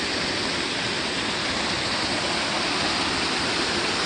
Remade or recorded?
recorded